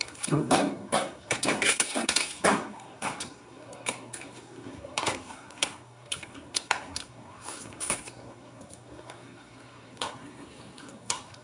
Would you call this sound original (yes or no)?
no